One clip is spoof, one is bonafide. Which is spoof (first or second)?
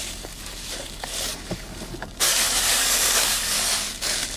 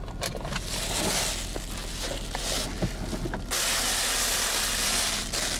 first